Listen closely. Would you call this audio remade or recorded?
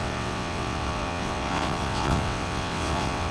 remade